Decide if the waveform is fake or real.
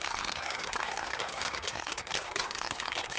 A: fake